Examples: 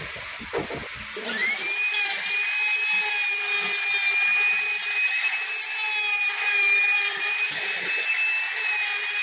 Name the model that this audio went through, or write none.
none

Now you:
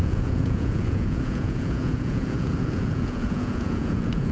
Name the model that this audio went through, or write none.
vocoder, Vocos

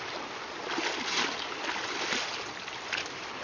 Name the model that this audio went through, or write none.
none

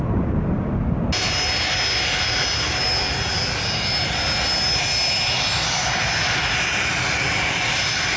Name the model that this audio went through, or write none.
none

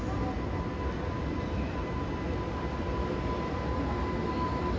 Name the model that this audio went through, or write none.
none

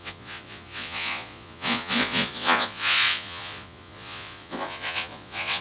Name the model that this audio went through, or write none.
vocoder, Vocos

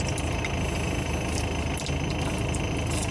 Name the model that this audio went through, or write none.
none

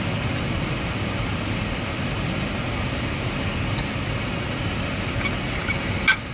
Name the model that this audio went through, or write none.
none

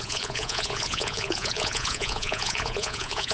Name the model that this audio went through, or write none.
vocoder, Vocos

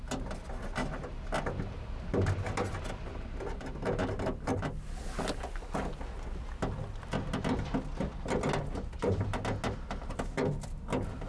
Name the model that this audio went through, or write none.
none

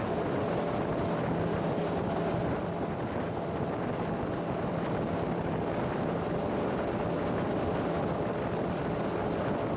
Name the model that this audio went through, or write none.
none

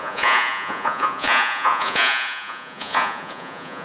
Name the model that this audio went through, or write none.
vocoder, Vocos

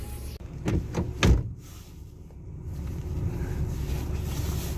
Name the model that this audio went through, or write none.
none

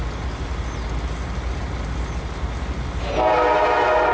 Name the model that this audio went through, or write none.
none